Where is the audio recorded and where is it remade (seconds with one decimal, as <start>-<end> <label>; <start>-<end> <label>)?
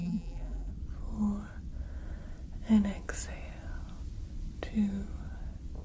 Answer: 0.0-0.7 remade; 0.7-5.8 recorded